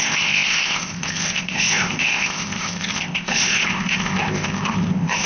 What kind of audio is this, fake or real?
fake